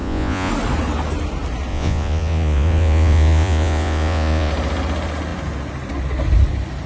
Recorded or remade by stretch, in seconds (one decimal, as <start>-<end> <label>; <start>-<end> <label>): 0.0-0.5 remade; 0.5-1.7 recorded; 1.7-4.5 remade; 4.5-6.9 recorded